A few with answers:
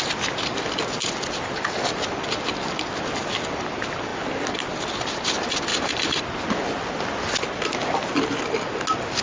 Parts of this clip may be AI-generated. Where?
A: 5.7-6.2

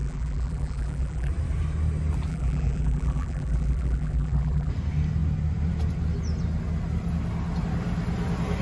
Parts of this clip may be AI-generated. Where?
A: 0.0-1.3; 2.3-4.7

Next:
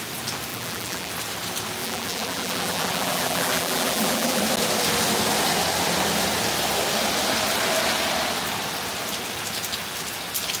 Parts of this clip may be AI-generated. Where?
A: 0.5-1.1; 1.8-4.4

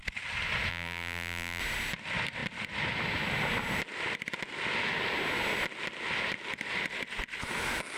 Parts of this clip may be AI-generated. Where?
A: 0.7-1.6

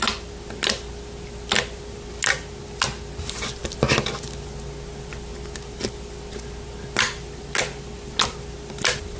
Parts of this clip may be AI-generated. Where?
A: none

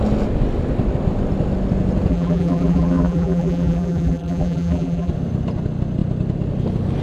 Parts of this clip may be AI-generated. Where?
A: 2.1-5.1

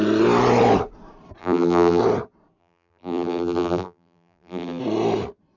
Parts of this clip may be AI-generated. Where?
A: 1.4-2.0; 2.6-4.8